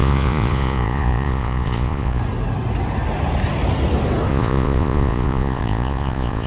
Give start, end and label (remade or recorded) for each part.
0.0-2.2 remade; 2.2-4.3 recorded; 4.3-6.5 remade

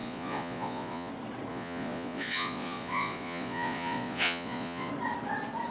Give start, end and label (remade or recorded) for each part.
0.0-1.1 remade; 1.1-1.5 recorded; 1.5-4.9 remade; 4.9-5.7 recorded

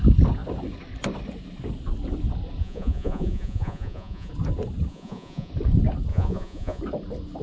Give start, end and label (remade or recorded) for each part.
0.0-2.6 recorded; 2.6-4.3 remade; 4.3-4.9 recorded; 4.9-5.5 remade; 5.5-6.1 recorded; 6.1-6.8 remade; 6.8-7.4 recorded

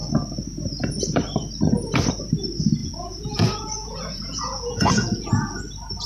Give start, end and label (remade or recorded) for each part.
0.0-2.8 recorded; 2.8-5.6 remade; 5.6-6.1 recorded

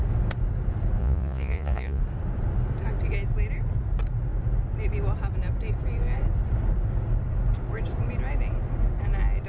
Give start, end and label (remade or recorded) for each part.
0.0-1.0 recorded; 1.0-2.0 remade; 2.0-9.5 recorded